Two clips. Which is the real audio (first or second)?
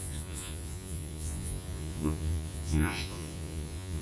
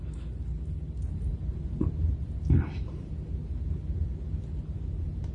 second